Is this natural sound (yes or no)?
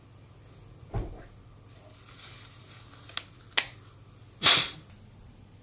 yes